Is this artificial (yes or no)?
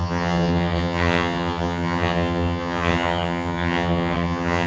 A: yes